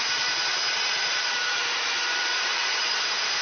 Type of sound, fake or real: fake